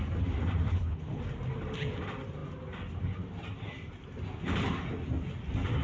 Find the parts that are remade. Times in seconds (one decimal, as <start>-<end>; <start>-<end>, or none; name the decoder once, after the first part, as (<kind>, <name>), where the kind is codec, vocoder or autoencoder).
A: 0.7-1.2 (codec, HILCodec)